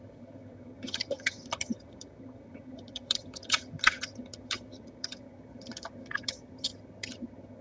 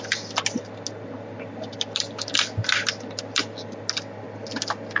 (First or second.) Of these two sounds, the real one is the second